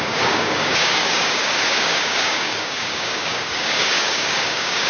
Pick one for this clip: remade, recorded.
remade